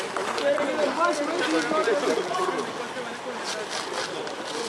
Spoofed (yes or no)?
no